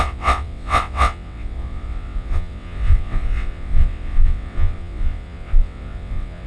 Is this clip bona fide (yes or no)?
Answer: no